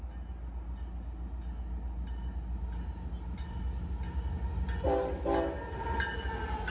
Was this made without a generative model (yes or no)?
yes